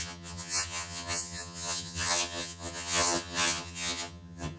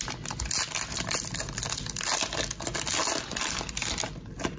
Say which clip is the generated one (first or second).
first